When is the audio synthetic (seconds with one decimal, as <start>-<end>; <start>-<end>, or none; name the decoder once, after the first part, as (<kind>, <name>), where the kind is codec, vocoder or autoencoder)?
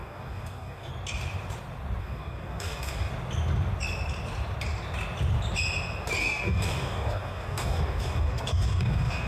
0.0-0.9 (codec, DAC); 2.0-3.1; 6.2-9.3